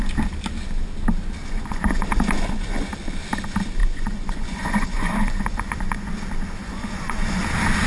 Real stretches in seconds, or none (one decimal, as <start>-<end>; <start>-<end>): 0.0-1.4; 2.9-3.8; 6.1-6.6; 7.4-7.9